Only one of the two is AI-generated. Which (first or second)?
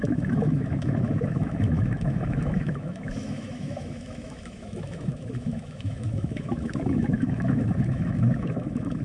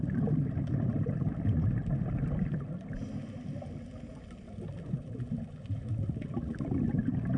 first